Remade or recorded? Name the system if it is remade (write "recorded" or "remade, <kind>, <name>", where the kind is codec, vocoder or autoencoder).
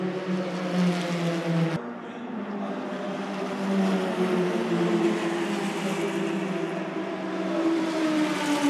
recorded